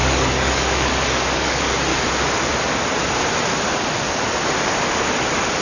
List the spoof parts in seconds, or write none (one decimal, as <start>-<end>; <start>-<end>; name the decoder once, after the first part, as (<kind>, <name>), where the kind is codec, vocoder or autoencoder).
0.0-1.9 (codec, DAC)